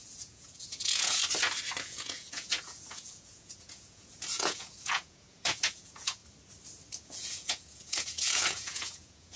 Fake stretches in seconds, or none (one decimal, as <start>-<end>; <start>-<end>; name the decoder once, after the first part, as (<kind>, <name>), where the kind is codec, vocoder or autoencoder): 0.0-1.2 (vocoder, Vocos); 1.8-6.2; 7.0-9.4